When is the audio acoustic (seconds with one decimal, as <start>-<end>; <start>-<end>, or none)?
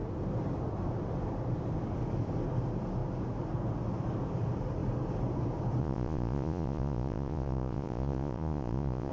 0.0-5.8